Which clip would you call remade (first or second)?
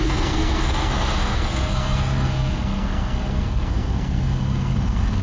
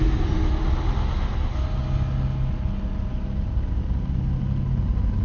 first